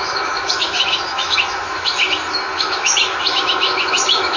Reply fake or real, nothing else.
fake